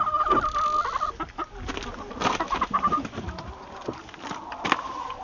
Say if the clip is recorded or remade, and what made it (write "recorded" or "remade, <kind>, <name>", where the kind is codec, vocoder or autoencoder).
recorded